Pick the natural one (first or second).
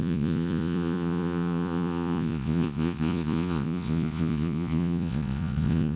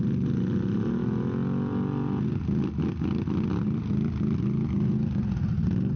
second